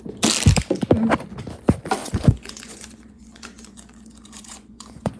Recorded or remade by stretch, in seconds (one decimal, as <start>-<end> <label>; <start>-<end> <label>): 0.0-2.0 recorded; 2.0-5.2 remade